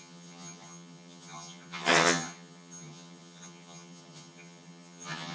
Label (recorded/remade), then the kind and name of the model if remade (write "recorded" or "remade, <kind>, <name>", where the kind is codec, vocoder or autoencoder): remade, vocoder, HiFi-GAN